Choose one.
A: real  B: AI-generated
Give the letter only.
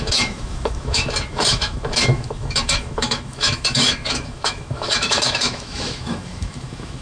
B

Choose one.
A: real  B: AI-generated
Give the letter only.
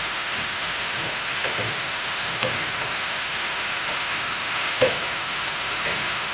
B